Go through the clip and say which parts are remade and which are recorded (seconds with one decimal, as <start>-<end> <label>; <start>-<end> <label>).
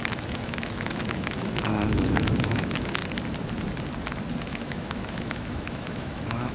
0.0-3.0 remade; 3.0-4.4 recorded; 4.4-6.5 remade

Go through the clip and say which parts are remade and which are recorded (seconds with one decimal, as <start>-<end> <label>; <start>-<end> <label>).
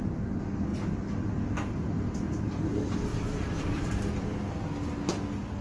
0.0-3.1 recorded; 3.1-4.6 remade; 4.6-5.6 recorded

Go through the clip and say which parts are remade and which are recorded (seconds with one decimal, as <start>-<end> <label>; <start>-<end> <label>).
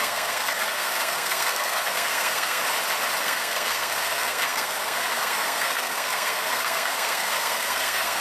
0.0-2.6 remade; 2.6-3.2 recorded; 3.2-8.2 remade